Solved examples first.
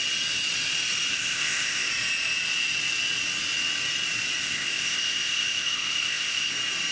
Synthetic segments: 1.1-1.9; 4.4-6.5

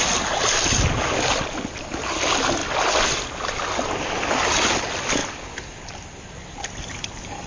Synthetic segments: none

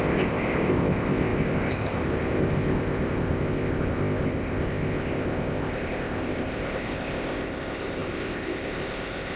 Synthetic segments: 0.0-9.4